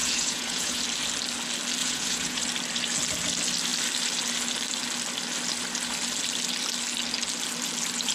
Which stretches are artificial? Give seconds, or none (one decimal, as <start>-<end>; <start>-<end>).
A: 0.0-0.8; 1.8-2.4